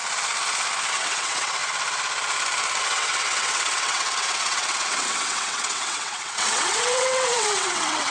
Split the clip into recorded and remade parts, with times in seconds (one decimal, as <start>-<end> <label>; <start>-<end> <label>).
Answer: 0.0-0.9 recorded; 0.9-1.6 remade; 1.6-2.8 recorded; 2.8-8.1 remade